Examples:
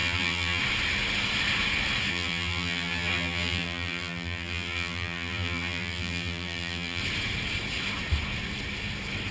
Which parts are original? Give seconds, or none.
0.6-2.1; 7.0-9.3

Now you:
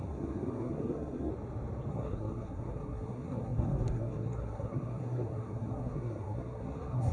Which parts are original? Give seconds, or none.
1.3-1.9

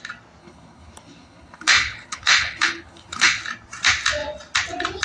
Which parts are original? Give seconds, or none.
0.0-0.4; 3.4-5.0

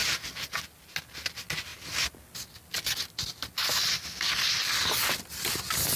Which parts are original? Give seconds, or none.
1.0-6.0

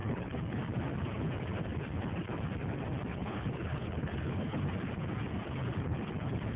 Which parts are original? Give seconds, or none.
0.6-3.1; 4.6-6.6

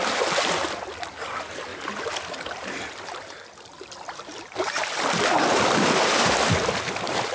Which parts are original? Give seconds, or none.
0.8-1.7; 6.1-7.3